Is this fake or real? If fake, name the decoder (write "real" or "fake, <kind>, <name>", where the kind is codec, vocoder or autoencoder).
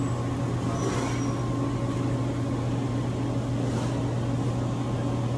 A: real